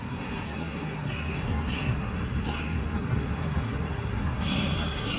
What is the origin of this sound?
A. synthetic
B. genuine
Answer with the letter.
A